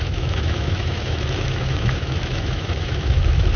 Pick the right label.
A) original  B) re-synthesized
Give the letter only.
B